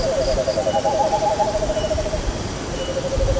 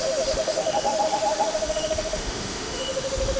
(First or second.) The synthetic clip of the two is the second